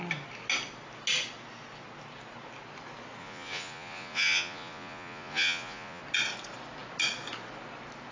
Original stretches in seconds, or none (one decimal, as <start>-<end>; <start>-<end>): 0.0-3.2; 6.0-8.1